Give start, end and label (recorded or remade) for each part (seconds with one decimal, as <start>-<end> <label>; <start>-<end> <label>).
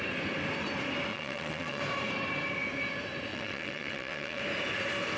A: 0.0-1.1 recorded; 1.1-1.8 remade; 1.8-3.3 recorded; 3.3-4.4 remade; 4.4-5.2 recorded